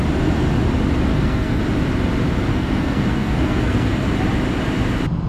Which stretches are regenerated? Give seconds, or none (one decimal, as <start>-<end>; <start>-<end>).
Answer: 1.1-1.6; 2.5-4.1